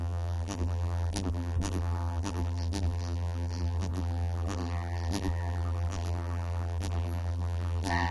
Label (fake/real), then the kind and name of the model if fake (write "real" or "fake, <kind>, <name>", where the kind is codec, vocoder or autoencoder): fake, vocoder, BigVGAN v2